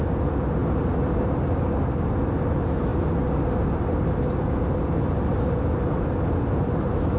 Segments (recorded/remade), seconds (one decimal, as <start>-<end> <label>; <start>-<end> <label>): 0.0-7.2 recorded